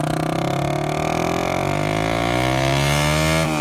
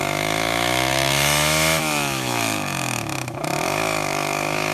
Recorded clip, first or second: first